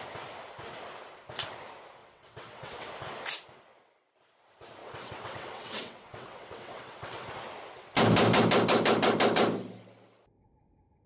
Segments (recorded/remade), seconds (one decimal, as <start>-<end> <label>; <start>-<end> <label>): 0.0-2.0 recorded; 2.0-2.9 remade; 2.9-4.8 recorded; 4.8-7.3 remade; 7.3-11.1 recorded